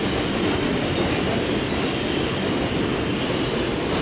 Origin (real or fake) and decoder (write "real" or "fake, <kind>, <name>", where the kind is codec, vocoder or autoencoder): real